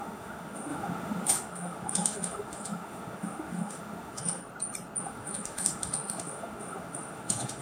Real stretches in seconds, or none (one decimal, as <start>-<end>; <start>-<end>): 4.4-5.0

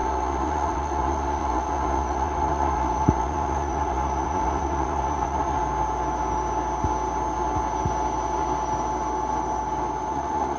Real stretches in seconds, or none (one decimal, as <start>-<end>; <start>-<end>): 5.6-10.1

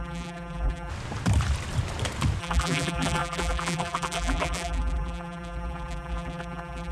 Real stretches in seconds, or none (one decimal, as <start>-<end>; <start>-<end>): 0.9-2.4

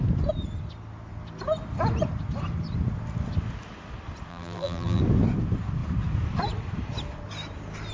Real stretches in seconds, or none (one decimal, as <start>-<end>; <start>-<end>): 0.0-4.3; 5.0-7.9

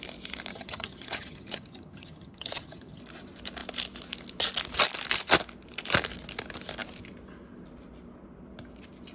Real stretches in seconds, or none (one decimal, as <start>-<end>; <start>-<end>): 0.0-0.5; 3.0-9.1